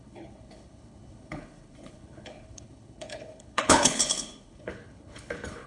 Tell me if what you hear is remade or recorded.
remade